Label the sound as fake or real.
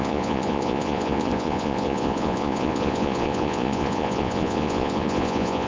fake